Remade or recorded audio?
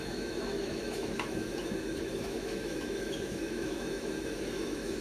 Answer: remade